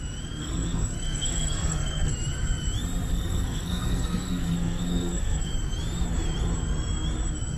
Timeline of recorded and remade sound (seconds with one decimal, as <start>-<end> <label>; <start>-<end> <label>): 0.0-0.4 recorded; 0.4-2.1 remade; 2.1-3.1 recorded; 3.1-5.5 remade; 5.5-7.6 recorded